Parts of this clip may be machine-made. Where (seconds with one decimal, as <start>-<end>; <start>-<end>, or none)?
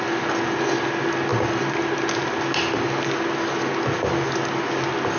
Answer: none